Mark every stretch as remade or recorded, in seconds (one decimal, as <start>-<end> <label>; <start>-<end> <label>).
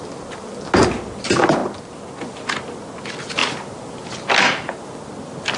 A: 0.0-5.6 recorded